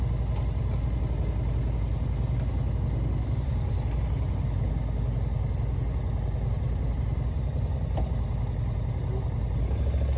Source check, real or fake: real